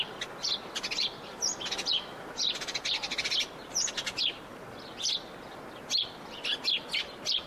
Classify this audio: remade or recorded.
recorded